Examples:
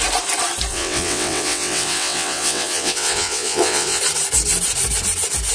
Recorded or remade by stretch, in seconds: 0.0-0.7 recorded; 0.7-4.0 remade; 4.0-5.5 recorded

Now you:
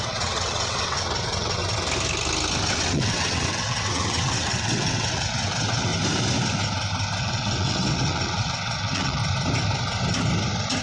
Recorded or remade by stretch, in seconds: 0.0-1.6 remade; 1.6-2.7 recorded; 2.7-5.9 remade; 5.9-7.2 recorded; 7.2-9.2 remade; 9.2-10.8 recorded

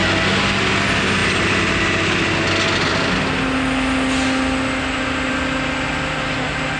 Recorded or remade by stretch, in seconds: 0.0-6.8 recorded

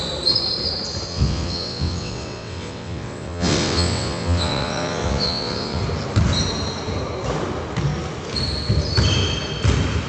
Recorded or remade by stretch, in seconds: 0.0-1.1 recorded; 1.1-5.8 remade; 5.8-10.1 recorded

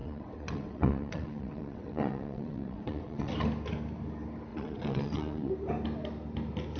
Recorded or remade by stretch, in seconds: 0.0-3.3 remade; 3.3-4.5 recorded; 4.5-5.5 remade; 5.5-6.8 recorded